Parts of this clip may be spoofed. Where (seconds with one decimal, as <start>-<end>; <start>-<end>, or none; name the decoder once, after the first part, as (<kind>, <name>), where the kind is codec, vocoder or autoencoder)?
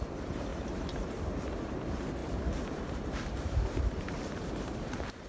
0.0-5.3 (vocoder, BigVGAN v2)